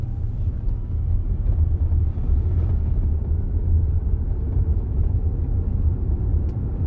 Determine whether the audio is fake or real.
fake